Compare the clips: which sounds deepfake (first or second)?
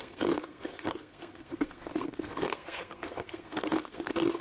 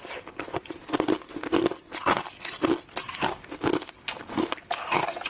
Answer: first